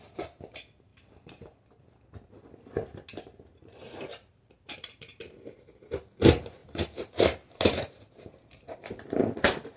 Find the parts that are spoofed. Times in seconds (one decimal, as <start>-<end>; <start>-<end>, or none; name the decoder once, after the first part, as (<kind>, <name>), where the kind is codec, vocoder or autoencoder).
0.0-0.9 (vocoder, BigVGAN v2); 4.3-9.8

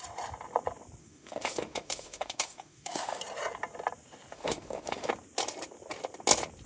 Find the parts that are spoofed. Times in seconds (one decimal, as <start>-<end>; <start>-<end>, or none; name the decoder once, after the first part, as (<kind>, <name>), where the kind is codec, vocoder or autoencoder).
1.0-3.2 (autoencoder, DAC-VAE); 4.3-5.1